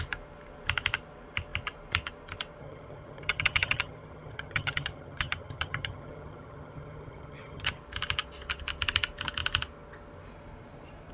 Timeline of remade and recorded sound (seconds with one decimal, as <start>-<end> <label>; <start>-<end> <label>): 0.0-2.6 recorded; 2.6-7.8 remade; 7.8-11.1 recorded